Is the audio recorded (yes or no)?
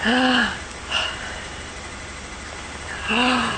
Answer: yes